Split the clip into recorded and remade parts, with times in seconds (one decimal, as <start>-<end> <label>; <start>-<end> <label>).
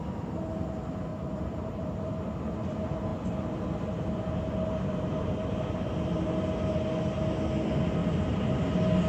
0.0-1.1 recorded; 1.1-2.0 remade; 2.0-8.0 recorded; 8.0-8.5 remade; 8.5-9.1 recorded